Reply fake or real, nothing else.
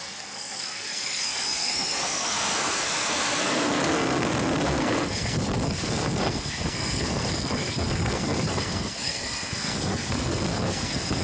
fake